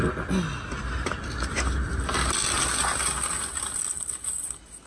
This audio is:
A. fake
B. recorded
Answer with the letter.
B